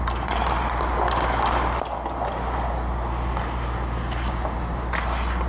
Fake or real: real